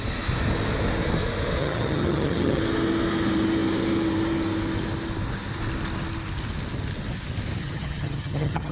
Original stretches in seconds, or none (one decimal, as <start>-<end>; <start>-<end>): 0.0-1.6; 2.6-7.6